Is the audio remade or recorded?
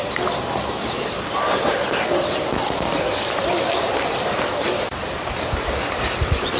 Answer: remade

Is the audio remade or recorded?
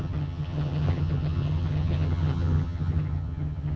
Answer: remade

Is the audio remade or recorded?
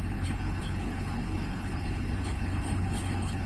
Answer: remade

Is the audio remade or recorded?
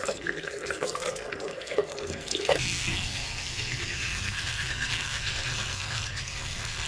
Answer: remade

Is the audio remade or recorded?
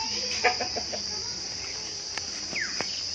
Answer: recorded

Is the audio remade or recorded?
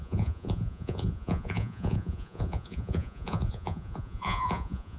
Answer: remade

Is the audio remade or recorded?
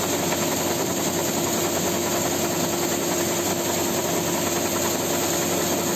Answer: recorded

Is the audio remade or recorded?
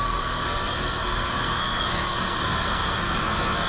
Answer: remade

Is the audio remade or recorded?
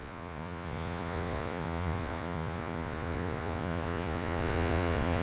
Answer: remade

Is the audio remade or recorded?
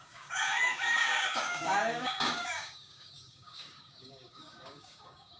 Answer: remade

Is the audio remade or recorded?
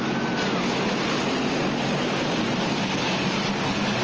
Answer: recorded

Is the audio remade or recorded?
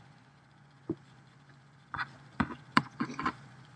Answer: remade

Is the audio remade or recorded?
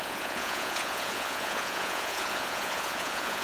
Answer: remade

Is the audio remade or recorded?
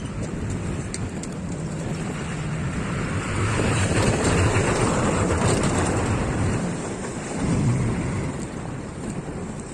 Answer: recorded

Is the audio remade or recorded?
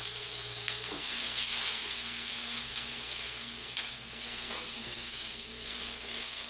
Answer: remade